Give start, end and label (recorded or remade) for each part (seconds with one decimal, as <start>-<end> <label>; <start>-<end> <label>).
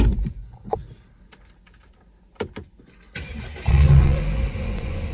0.0-0.8 remade; 0.8-3.7 recorded; 3.7-5.1 remade